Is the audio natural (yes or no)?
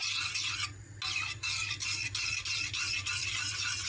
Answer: yes